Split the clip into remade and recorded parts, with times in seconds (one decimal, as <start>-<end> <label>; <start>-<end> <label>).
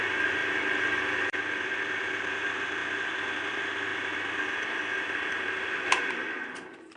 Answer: 0.0-0.4 recorded; 0.4-2.3 remade; 2.3-7.0 recorded